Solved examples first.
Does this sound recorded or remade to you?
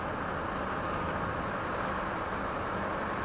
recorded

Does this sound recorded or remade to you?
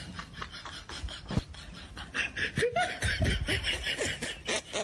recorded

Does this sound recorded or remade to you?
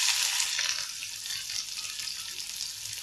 recorded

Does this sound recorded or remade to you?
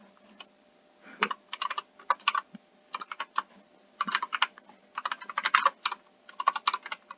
recorded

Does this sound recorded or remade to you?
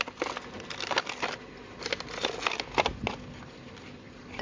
recorded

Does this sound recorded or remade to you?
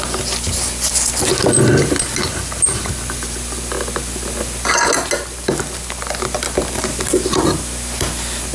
recorded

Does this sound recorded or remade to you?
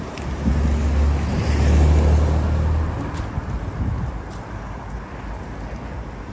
recorded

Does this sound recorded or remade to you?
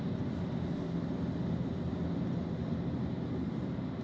recorded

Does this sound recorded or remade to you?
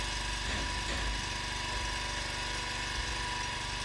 recorded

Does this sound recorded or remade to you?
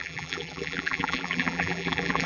remade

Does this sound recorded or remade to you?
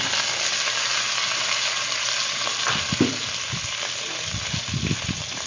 recorded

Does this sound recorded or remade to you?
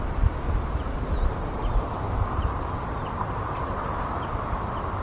remade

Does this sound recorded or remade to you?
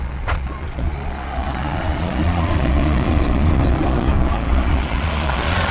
remade